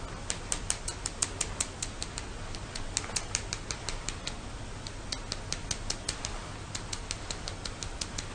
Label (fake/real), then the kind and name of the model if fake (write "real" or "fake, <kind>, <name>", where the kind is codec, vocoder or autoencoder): real